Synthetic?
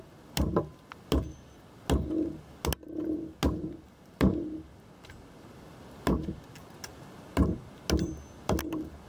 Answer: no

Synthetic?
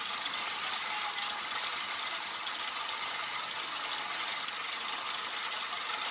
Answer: no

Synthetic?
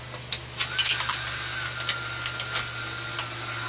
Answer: no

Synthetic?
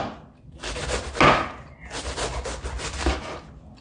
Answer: no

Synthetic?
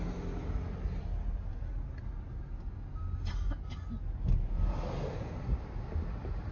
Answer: no